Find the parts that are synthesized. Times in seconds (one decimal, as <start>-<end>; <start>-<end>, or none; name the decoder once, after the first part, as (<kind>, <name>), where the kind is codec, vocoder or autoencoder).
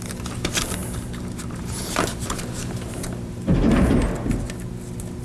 0.8-3.8 (vocoder, BigVGAN v2)